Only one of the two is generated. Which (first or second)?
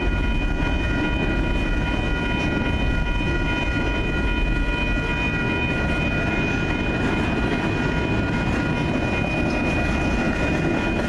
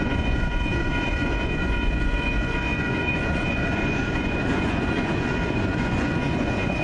second